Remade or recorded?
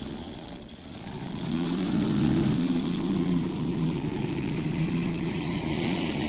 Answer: remade